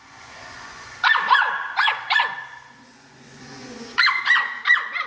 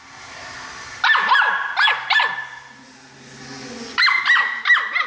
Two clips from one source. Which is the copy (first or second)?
first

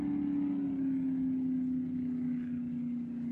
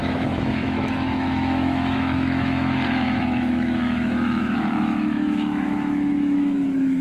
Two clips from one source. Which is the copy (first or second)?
second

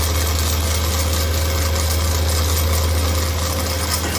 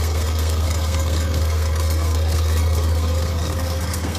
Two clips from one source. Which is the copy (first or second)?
second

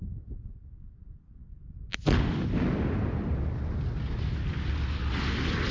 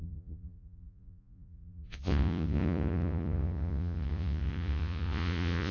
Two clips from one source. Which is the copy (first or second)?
second